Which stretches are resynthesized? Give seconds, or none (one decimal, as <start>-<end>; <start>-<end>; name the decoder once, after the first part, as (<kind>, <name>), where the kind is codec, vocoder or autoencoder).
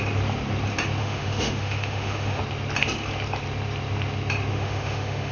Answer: 1.0-2.4 (autoencoder, DAC-VAE); 4.5-5.3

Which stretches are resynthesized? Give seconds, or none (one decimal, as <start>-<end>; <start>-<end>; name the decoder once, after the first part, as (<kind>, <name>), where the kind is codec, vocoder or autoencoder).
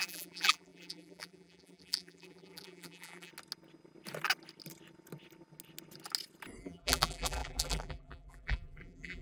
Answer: 0.0-3.3 (vocoder, BigVGAN v2); 6.6-9.2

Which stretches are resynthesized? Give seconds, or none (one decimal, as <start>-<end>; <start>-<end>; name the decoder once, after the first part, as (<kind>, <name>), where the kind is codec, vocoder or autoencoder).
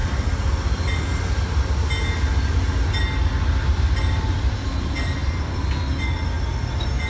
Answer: none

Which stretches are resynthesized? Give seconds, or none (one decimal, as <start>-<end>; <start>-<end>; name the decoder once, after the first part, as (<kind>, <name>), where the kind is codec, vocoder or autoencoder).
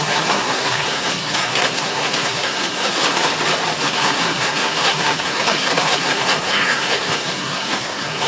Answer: 0.0-3.3 (codec, SNAC); 3.8-8.3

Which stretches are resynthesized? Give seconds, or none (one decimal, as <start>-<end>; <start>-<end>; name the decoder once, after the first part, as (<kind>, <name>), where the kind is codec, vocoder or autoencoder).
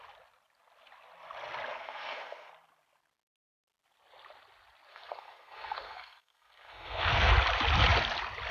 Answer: 1.7-2.5 (codec, SNAC); 4.9-7.3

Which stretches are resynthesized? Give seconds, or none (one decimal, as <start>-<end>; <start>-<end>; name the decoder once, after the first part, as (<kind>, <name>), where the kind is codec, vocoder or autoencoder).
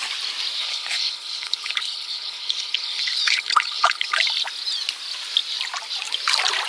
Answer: 0.6-4.2 (codec, HILCodec)